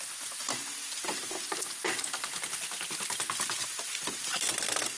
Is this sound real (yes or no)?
yes